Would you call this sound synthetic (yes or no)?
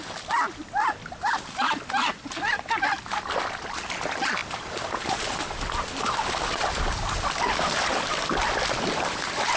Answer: no